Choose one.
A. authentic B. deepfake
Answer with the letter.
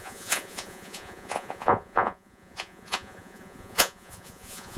B